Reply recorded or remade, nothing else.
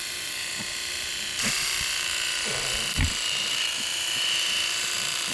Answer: remade